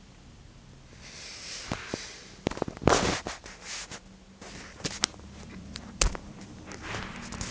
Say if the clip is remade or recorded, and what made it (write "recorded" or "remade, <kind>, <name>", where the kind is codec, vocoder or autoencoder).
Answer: recorded